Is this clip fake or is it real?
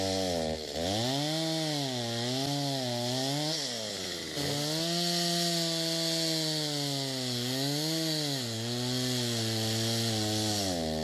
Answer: real